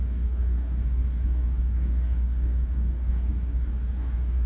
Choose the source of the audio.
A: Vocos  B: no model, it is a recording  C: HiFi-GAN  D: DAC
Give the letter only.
D